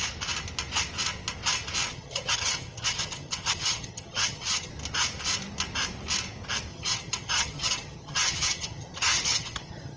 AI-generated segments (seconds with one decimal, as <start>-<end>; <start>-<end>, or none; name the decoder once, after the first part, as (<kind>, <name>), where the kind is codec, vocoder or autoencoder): 1.9-4.7 (vocoder, HiFi-GAN); 6.7-10.0